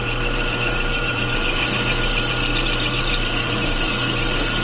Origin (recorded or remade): remade